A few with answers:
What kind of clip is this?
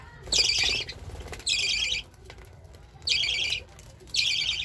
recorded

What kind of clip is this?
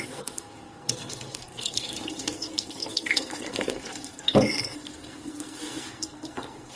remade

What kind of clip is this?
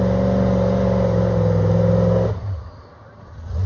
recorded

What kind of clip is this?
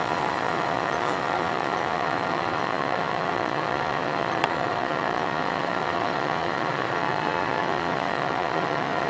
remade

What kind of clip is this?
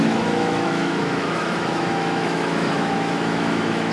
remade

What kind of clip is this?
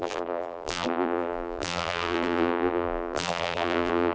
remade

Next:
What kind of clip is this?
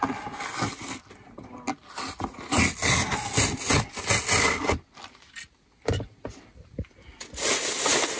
recorded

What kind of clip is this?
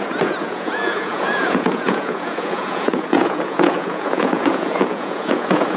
remade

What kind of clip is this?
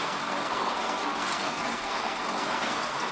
remade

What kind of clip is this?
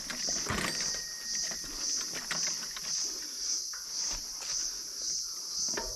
recorded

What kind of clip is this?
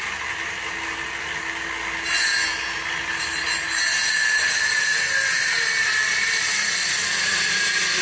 recorded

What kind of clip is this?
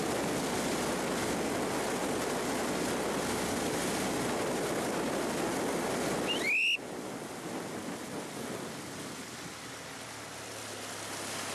recorded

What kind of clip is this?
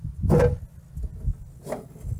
recorded